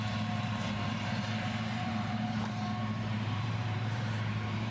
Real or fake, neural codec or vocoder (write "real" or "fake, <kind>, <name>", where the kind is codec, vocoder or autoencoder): fake, vocoder, BigVGAN v2